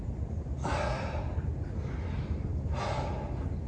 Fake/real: real